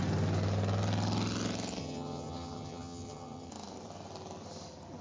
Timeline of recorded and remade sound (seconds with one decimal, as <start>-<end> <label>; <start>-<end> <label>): 0.0-1.8 recorded; 1.8-3.5 remade; 3.5-5.0 recorded